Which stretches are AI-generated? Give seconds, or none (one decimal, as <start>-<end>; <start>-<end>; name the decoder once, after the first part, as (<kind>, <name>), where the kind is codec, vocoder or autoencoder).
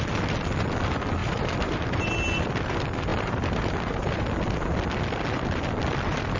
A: 1.2-2.1 (vocoder, BigVGAN v2); 3.1-4.2